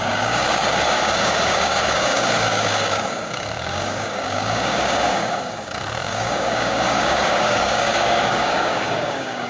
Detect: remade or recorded remade